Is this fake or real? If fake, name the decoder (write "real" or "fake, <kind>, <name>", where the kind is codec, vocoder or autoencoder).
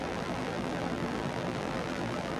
fake, vocoder, BigVGAN v2